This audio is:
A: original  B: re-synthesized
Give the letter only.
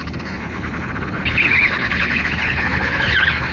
B